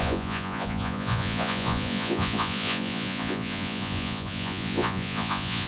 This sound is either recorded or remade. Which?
remade